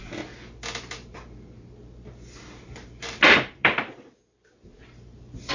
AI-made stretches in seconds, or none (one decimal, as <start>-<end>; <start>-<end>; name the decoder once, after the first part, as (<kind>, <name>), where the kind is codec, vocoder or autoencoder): none